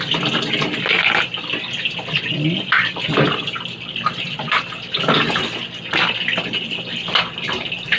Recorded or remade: recorded